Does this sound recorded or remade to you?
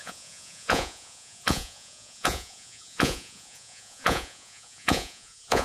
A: remade